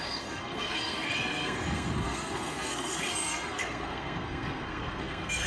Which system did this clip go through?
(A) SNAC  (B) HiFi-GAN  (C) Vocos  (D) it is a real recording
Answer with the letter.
A